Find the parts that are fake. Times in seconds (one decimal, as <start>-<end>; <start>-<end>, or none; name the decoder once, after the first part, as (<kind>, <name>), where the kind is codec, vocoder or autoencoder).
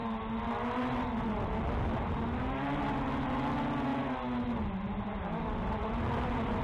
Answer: none